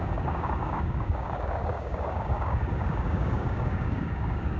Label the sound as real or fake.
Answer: fake